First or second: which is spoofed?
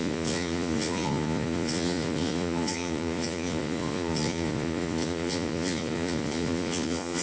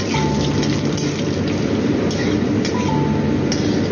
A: first